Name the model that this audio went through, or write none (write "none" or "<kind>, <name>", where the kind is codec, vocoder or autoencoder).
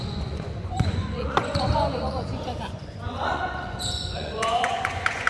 vocoder, Vocos